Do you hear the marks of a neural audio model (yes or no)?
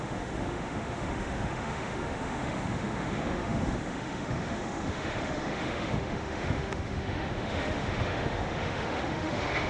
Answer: yes